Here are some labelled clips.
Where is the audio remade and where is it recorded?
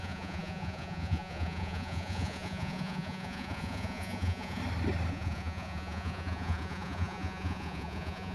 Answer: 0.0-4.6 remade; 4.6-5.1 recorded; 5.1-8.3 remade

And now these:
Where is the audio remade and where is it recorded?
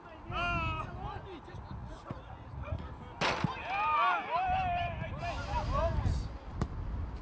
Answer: 0.0-1.8 recorded; 1.8-2.9 remade; 2.9-7.2 recorded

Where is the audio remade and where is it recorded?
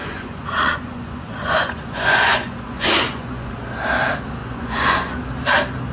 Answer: 0.0-3.5 remade; 3.5-4.4 recorded; 4.4-5.2 remade; 5.2-5.9 recorded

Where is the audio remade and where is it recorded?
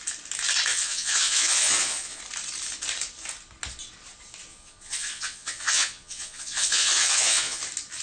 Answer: 0.0-0.7 recorded; 0.7-2.2 remade; 2.2-4.5 recorded; 4.5-7.6 remade; 7.6-8.0 recorded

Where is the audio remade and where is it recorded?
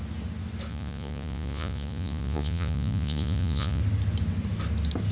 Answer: 0.0-0.7 recorded; 0.7-3.8 remade; 3.8-5.1 recorded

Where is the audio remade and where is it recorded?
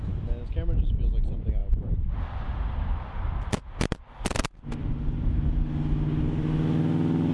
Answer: 0.0-7.3 recorded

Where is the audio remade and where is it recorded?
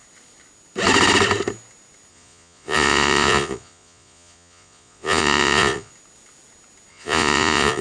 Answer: 0.0-2.1 recorded; 2.1-5.9 remade; 5.9-6.9 recorded; 6.9-7.8 remade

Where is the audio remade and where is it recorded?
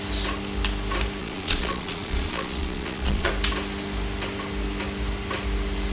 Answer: 0.0-1.2 recorded; 1.2-3.3 remade; 3.3-5.9 recorded